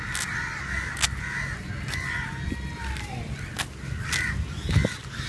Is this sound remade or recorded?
recorded